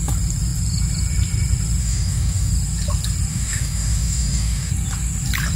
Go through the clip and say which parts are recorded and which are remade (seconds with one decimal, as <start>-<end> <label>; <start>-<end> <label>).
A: 0.0-1.8 recorded; 1.8-2.5 remade; 2.5-3.3 recorded; 3.3-4.7 remade; 4.7-5.6 recorded